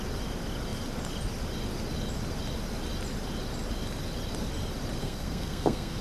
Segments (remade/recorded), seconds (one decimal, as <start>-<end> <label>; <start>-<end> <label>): 0.0-5.0 recorded; 5.0-6.0 remade